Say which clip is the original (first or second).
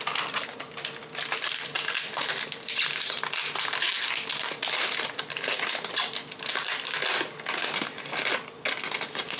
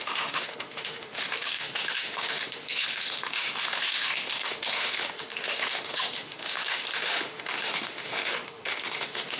first